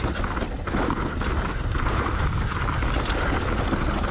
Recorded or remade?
recorded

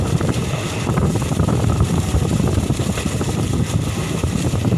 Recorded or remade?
remade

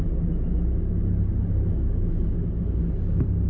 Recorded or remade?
recorded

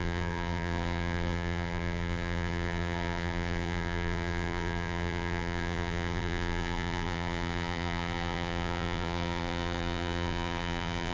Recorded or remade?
remade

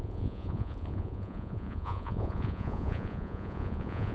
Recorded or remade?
remade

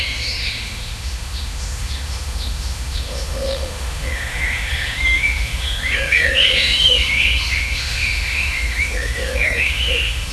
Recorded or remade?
remade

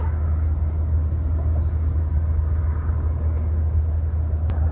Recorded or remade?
recorded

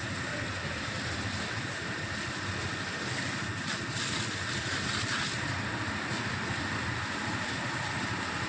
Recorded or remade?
recorded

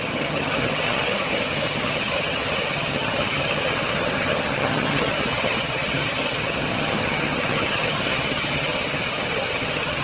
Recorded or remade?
remade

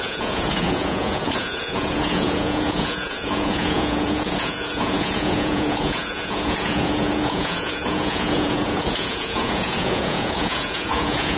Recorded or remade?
remade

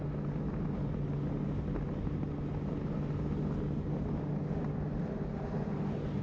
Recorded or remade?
recorded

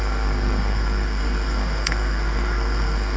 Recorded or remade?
remade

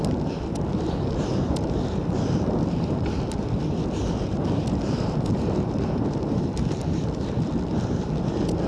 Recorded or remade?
remade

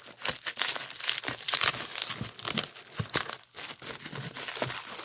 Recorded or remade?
recorded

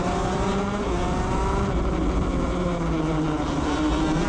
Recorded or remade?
recorded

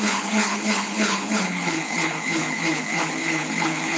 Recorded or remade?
remade